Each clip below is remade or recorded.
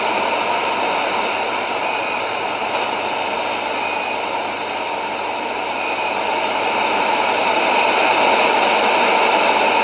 recorded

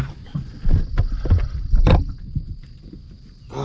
recorded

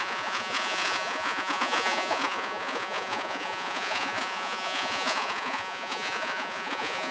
remade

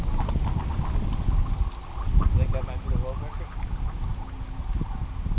recorded